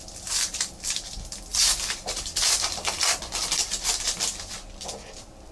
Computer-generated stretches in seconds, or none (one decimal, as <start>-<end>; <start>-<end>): 1.5-2.9